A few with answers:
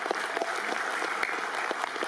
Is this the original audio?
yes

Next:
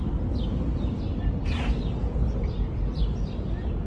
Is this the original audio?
yes